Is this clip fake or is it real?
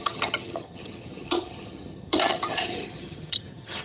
fake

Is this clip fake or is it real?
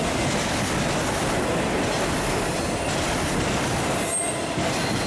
real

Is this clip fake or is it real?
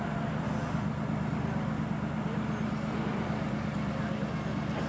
real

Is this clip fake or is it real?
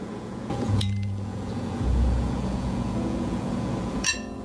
fake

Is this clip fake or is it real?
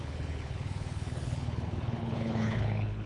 fake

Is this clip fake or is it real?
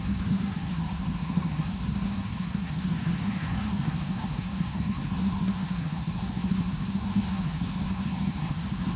fake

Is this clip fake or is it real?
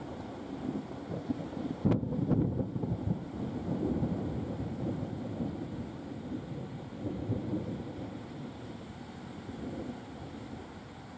fake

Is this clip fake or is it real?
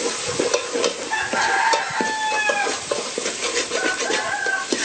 real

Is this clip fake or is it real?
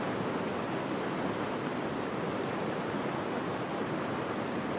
real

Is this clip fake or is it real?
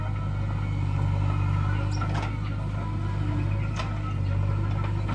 real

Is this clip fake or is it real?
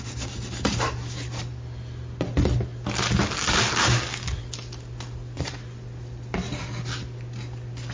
real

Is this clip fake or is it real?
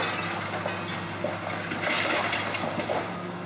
real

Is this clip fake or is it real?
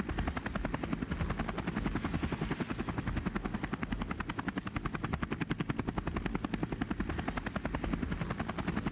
real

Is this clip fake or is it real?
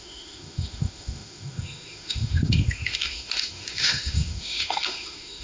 fake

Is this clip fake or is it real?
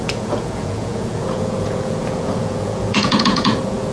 fake